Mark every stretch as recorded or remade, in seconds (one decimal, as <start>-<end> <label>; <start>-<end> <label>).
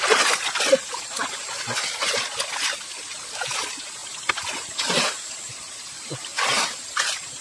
0.0-7.4 recorded